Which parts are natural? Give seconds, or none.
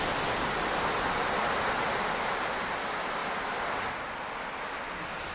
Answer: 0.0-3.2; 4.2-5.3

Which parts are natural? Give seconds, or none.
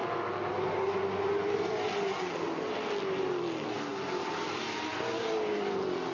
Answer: 0.0-6.1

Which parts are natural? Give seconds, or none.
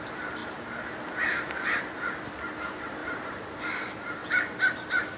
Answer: 0.0-3.0; 3.7-5.2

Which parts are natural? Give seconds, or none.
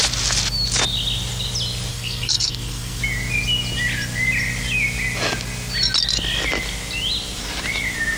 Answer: 0.0-1.9; 3.0-8.2